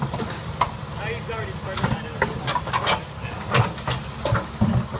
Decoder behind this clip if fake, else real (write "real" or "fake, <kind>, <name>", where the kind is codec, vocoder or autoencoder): real